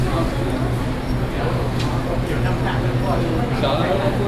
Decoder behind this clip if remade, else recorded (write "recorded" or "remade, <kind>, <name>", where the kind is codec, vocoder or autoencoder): recorded